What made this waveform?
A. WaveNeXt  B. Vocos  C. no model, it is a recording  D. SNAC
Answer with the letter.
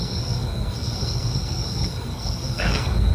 D